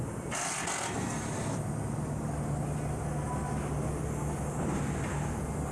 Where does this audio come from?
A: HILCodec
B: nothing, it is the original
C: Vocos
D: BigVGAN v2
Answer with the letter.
B